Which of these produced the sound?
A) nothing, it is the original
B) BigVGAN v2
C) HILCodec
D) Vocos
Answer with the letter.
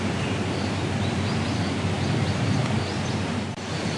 A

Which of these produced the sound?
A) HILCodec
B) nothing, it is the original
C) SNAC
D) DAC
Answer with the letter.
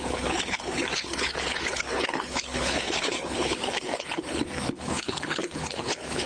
A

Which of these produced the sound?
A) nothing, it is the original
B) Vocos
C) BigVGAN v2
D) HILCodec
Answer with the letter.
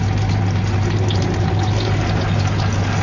A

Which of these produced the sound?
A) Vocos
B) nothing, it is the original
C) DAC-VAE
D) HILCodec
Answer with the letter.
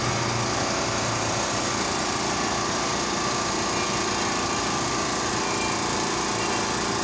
B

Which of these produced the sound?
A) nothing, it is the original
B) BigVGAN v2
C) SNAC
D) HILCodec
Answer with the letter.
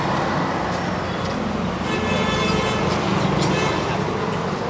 A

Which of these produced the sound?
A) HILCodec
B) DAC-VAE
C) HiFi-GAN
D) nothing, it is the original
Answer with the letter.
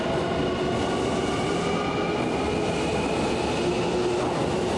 D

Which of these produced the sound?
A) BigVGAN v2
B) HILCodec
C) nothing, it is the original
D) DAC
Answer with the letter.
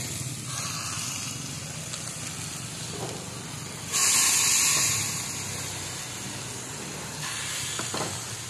C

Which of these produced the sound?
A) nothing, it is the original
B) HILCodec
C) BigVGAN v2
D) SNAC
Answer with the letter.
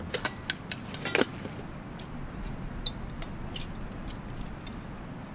A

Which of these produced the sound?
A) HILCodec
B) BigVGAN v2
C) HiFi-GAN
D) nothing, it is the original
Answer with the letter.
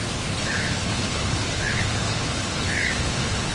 A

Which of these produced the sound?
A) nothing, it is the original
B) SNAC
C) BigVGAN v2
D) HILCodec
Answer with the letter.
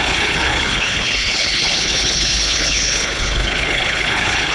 D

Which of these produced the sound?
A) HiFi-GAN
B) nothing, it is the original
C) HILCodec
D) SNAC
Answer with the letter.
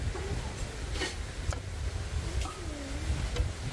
B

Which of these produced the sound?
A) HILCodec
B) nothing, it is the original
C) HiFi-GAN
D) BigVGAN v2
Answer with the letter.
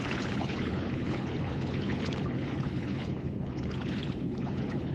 A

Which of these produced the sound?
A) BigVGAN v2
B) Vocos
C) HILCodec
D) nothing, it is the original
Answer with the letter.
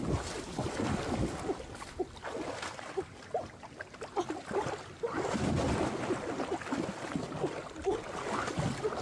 D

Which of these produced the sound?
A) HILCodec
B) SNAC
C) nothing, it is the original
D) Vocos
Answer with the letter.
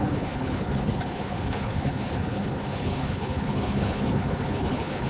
A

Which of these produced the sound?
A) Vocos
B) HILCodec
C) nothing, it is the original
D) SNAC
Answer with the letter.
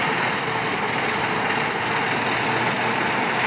C